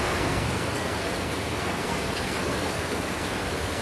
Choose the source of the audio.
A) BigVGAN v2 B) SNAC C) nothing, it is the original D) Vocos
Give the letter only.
B